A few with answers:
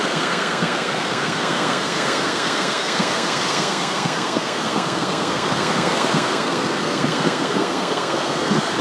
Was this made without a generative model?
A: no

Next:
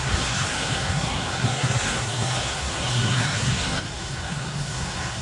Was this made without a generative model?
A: no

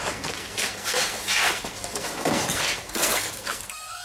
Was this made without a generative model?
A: no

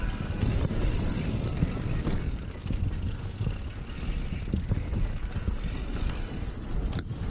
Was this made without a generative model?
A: yes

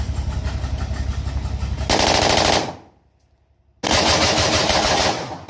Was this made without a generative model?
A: yes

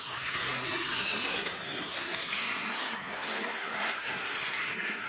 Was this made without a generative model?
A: no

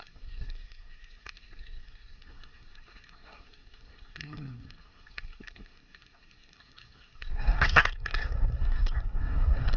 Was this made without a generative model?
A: no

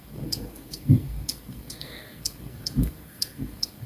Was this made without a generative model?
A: no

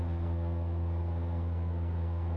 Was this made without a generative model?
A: no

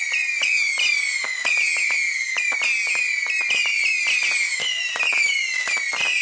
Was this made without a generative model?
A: yes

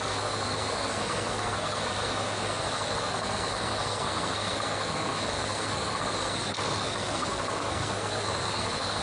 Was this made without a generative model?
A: no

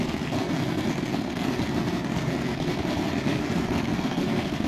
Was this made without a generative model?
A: no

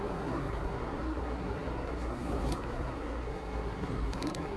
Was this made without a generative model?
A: no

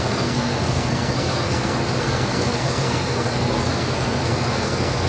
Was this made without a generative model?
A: no